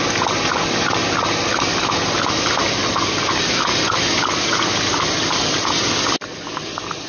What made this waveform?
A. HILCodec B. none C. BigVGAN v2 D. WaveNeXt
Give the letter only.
B